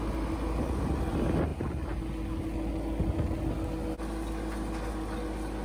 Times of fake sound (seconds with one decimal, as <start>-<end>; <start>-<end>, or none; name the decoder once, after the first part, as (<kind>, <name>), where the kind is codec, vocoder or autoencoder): none